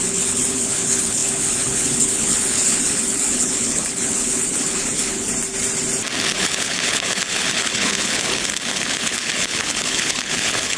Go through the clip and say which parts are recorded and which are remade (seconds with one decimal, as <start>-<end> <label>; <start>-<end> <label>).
0.0-5.3 remade; 5.3-6.3 recorded; 6.3-10.8 remade